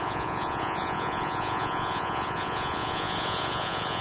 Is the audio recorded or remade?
remade